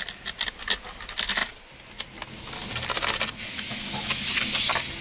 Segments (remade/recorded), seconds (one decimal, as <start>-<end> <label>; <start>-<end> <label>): 0.0-3.5 recorded; 3.5-4.2 remade; 4.2-5.0 recorded